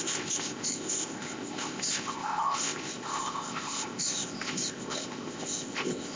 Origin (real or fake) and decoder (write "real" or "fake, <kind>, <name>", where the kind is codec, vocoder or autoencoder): fake, codec, ZipCodec